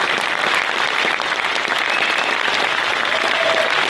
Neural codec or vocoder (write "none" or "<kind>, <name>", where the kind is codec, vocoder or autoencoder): none